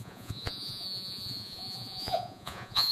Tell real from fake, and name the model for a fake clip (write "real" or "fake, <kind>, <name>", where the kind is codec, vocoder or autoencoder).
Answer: fake, vocoder, Vocos